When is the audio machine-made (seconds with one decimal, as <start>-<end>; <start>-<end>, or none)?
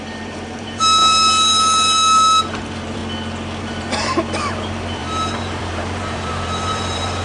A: 0.0-1.0; 2.5-3.0; 3.6-7.2